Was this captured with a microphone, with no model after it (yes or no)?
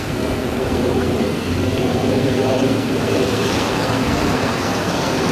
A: no